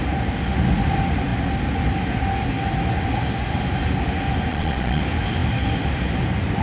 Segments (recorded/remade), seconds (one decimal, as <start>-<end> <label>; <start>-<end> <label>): 0.0-4.5 recorded; 4.5-5.0 remade; 5.0-6.6 recorded